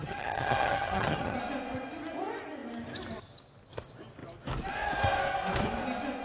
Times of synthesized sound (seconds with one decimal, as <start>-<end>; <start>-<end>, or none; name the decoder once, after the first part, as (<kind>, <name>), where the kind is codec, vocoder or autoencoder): 0.0-1.4 (vocoder, HiFi-GAN)